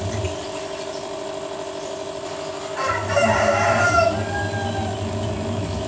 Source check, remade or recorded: recorded